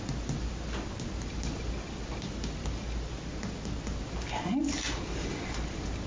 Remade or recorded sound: recorded